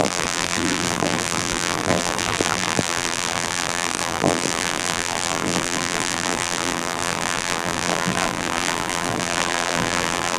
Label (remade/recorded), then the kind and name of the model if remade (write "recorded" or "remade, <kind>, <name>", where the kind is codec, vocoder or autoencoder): remade, vocoder, BigVGAN v2